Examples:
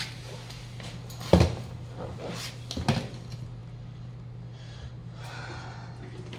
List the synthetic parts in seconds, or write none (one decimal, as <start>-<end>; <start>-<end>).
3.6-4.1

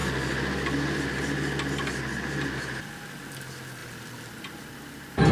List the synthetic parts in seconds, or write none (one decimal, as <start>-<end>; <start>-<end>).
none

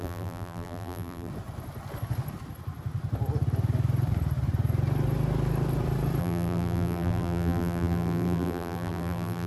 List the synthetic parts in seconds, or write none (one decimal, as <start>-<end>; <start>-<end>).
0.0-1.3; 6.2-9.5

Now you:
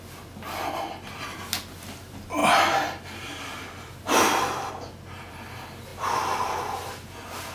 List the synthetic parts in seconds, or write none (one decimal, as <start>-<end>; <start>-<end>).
none

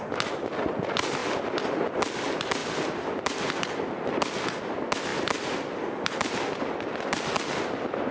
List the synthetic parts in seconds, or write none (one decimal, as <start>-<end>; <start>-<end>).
2.6-4.6; 5.1-6.4